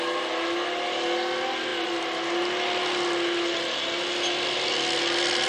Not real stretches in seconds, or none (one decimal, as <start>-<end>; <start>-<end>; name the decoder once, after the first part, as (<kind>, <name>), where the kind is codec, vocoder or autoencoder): none